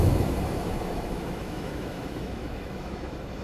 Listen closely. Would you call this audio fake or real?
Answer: fake